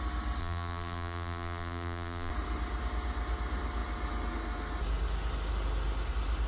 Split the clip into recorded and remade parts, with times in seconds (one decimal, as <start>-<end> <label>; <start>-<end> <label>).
0.0-0.4 recorded; 0.4-2.3 remade; 2.3-6.5 recorded